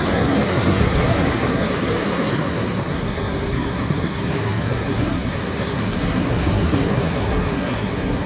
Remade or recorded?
remade